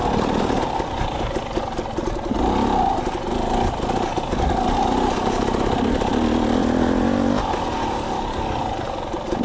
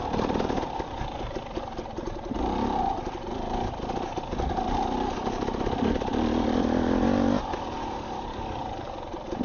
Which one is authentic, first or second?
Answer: first